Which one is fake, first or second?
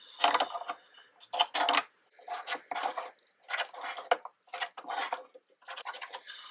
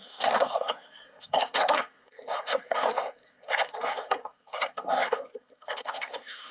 second